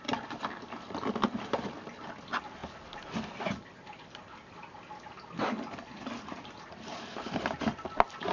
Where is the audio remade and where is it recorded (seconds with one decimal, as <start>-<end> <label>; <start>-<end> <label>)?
0.0-8.3 recorded